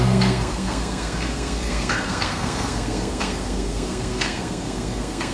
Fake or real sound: fake